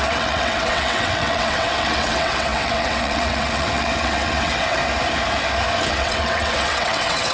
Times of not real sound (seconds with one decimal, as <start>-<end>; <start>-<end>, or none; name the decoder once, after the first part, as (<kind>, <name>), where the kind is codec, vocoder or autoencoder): 0.0-4.8 (vocoder, WaveNeXt); 5.9-7.3

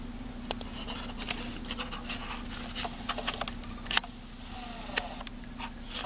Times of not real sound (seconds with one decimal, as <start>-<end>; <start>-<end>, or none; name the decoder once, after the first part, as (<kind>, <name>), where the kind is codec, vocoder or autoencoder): none

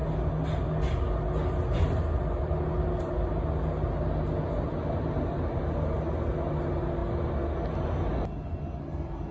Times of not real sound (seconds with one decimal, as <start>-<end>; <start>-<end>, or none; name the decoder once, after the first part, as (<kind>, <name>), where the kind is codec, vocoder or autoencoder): none

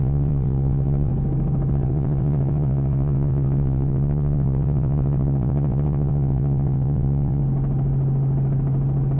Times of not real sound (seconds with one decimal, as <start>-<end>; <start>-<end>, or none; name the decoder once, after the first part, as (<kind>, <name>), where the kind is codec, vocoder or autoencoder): 0.0-1.1 (vocoder, WaveNeXt); 1.7-7.4

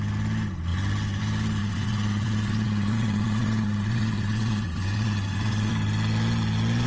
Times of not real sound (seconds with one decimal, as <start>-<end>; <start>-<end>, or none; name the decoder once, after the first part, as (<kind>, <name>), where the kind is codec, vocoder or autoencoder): 1.6-5.7 (vocoder, WaveNeXt)

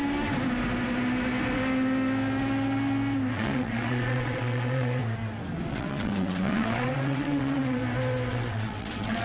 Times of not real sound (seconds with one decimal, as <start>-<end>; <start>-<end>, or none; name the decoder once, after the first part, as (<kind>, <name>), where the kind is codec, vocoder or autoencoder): 3.3-5.0 (vocoder, WaveNeXt); 5.7-7.8; 8.3-9.2

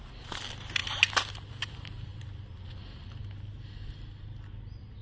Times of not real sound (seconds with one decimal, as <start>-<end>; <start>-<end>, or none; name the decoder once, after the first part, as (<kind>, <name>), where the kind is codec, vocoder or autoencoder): none

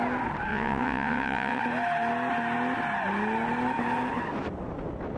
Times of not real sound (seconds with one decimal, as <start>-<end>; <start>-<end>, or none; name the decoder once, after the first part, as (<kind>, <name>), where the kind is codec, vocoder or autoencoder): 0.5-1.6 (vocoder, WaveNeXt)